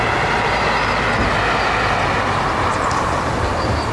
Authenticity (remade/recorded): recorded